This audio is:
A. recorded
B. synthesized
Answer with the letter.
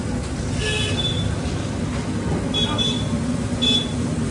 A